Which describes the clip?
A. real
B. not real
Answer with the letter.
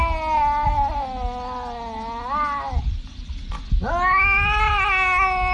A